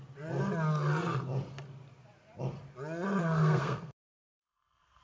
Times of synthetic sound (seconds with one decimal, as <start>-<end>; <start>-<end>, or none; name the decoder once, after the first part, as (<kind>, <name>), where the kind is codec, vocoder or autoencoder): 3.2-5.0 (codec, SNAC)